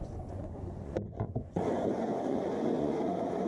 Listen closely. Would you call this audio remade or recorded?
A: remade